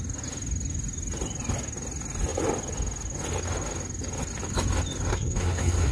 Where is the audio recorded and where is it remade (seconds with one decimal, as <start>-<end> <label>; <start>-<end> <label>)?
0.0-5.1 recorded; 5.1-5.9 remade